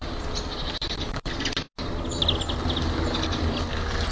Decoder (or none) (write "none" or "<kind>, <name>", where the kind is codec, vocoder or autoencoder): none